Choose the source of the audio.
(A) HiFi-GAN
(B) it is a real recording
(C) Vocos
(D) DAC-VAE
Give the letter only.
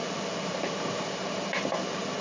B